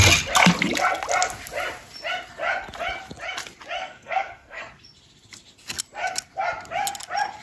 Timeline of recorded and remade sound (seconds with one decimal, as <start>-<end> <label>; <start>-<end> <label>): 0.0-3.8 recorded; 3.8-4.6 remade; 4.6-7.4 recorded